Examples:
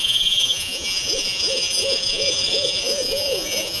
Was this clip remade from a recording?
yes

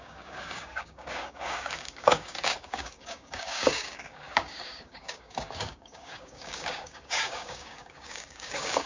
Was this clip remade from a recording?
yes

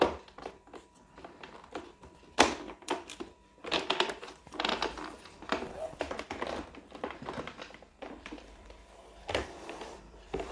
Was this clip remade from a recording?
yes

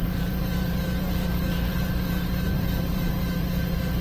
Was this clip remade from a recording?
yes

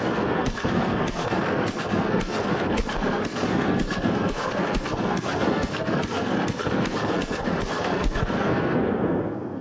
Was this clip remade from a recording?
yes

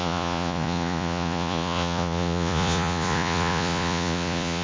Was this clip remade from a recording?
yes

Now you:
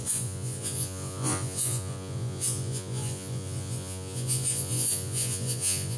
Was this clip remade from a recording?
yes